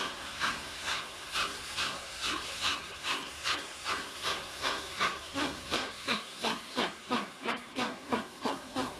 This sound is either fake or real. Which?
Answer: fake